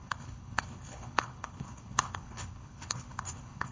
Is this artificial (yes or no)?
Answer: yes